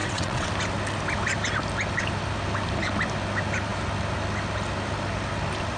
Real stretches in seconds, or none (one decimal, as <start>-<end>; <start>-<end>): 0.5-5.8